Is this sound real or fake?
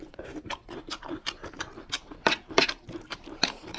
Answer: fake